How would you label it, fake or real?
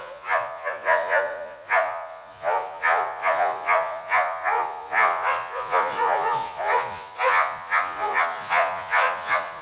fake